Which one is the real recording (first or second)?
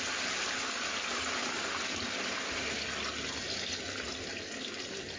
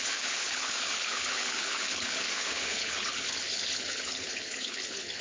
first